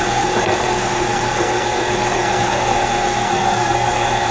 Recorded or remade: remade